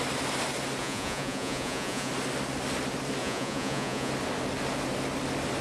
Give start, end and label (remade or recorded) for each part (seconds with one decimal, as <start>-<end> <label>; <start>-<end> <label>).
0.0-0.8 recorded; 0.8-2.1 remade; 2.1-3.2 recorded; 3.2-4.1 remade; 4.1-5.6 recorded